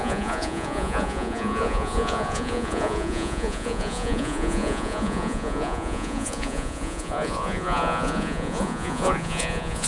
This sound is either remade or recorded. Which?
remade